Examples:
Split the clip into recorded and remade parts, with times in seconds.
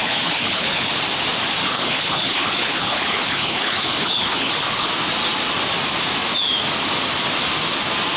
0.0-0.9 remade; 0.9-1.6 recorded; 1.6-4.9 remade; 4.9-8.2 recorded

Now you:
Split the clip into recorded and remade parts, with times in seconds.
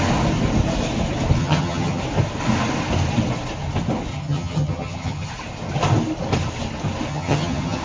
0.0-1.4 recorded; 1.4-2.0 remade; 2.0-4.1 recorded; 4.1-5.3 remade; 5.3-7.1 recorded; 7.1-7.8 remade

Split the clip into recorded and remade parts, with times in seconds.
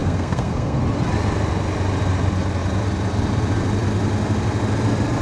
0.0-0.8 remade; 0.8-5.2 recorded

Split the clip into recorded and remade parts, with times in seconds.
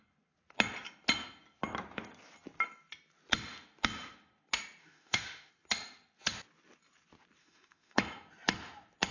0.0-4.8 recorded; 4.8-5.5 remade; 5.5-7.4 recorded; 7.4-8.0 remade; 8.0-9.1 recorded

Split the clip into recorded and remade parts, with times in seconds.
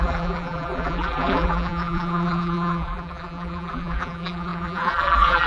0.0-5.5 remade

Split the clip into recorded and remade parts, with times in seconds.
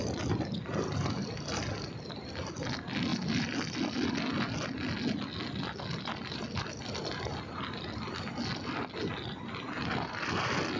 0.0-10.8 recorded